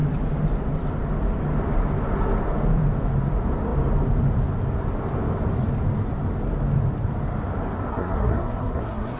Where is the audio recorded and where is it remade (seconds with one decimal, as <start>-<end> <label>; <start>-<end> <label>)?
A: 0.0-7.9 recorded; 7.9-9.2 remade